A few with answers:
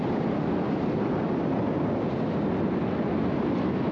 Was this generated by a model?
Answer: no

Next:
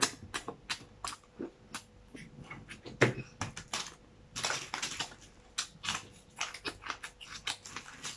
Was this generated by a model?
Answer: no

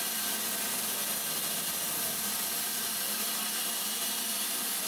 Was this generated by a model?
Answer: no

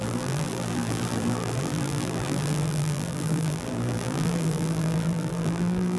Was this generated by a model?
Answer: yes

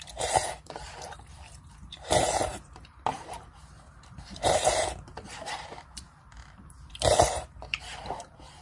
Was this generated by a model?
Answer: yes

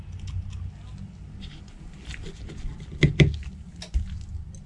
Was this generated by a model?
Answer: no